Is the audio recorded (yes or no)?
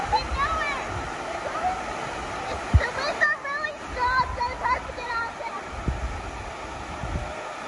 yes